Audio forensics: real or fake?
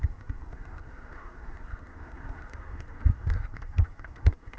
fake